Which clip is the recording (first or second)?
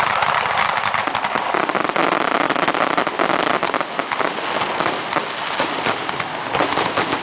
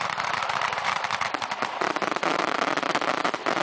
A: first